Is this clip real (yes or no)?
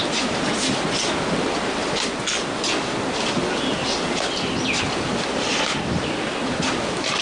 yes